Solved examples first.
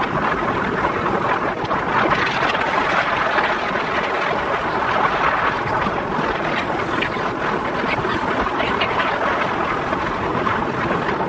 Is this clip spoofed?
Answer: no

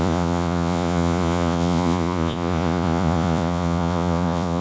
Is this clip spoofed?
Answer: yes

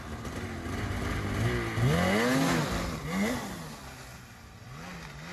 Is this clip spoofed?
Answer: no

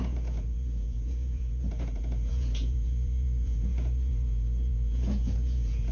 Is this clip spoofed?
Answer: yes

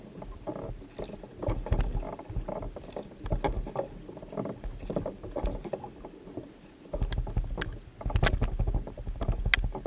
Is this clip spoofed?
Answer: no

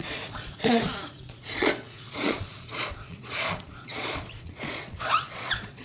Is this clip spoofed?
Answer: yes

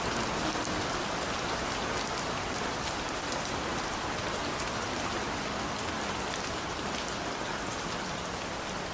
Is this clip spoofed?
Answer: no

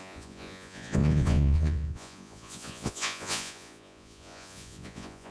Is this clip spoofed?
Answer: yes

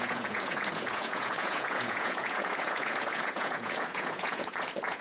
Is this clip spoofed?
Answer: yes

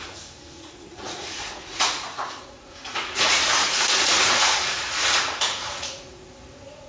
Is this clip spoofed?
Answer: yes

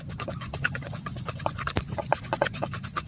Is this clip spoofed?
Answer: yes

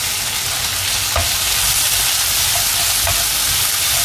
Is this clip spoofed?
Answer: no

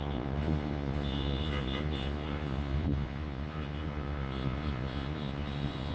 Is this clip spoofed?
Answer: yes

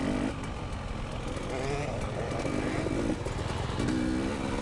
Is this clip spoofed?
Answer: no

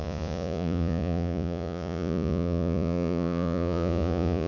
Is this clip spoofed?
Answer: yes